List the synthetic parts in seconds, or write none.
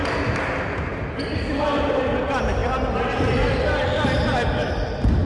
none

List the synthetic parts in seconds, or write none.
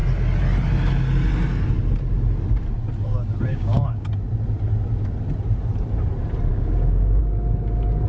3.5-4.1 (codec, DAC); 6.5-7.2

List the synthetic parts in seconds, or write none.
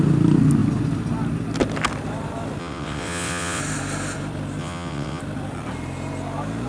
2.6-3.6 (vocoder, WaveNeXt); 4.6-5.2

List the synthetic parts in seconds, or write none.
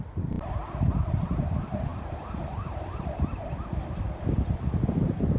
0.0-5.4 (vocoder, BigVGAN v2)